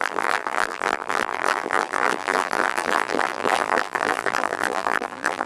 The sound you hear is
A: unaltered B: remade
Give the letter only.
B